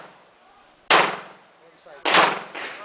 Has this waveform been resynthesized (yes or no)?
no